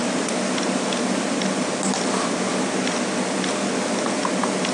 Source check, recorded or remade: recorded